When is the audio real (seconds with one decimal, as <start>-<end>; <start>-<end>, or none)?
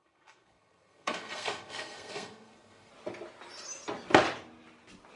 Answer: 2.9-5.2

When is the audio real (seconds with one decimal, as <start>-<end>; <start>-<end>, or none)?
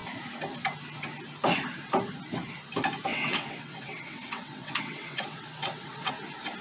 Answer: 0.0-3.1; 6.1-6.6